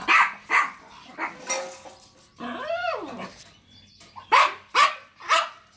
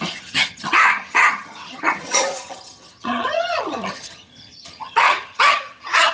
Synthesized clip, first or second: second